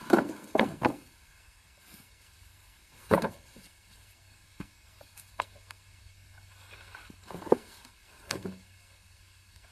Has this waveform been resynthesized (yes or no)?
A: yes